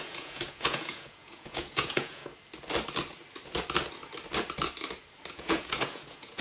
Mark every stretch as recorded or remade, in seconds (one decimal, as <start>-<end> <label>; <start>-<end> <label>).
0.0-2.3 remade; 2.3-5.3 recorded; 5.3-6.4 remade